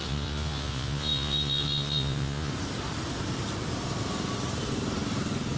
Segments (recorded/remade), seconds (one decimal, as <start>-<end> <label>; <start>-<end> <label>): 0.0-2.5 remade; 2.5-5.6 recorded